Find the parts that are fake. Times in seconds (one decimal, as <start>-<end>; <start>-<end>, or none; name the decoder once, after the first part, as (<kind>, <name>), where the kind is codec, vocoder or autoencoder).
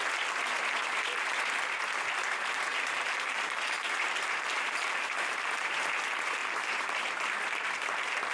2.7-6.0 (vocoder, BigVGAN v2); 6.4-7.1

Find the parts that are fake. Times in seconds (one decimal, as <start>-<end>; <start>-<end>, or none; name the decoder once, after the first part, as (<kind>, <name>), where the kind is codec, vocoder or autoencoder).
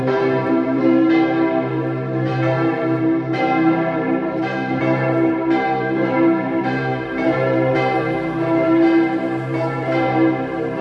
0.0-10.8 (vocoder, BigVGAN v2)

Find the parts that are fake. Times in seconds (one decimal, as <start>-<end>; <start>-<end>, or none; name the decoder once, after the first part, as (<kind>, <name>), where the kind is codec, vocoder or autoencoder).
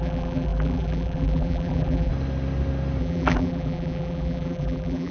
0.0-2.1 (vocoder, BigVGAN v2); 3.0-5.1